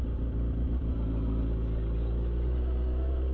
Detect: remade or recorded recorded